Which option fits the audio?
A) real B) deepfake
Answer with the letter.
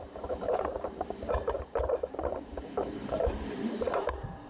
B